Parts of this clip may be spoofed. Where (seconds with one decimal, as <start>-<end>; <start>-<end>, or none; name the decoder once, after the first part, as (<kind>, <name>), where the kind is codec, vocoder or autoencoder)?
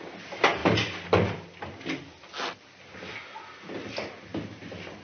none